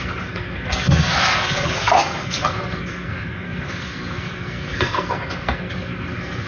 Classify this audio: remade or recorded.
remade